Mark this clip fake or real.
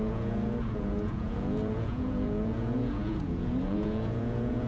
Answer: fake